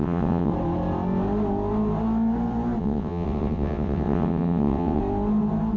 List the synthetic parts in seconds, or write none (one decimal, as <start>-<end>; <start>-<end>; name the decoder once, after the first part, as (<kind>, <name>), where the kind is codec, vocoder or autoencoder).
0.0-0.5 (vocoder, WaveNeXt); 2.8-5.0